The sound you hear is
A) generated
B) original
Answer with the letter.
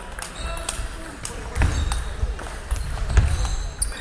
B